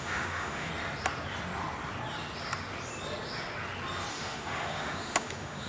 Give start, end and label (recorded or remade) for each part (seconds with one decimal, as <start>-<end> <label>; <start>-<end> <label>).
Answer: 0.0-0.7 remade; 0.7-4.1 recorded; 4.1-5.7 remade